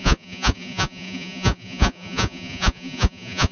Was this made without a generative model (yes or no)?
no